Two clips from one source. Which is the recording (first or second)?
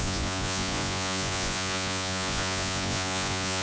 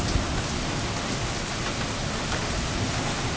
second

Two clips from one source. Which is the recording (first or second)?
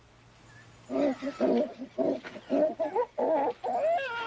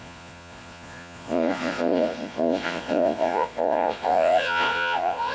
first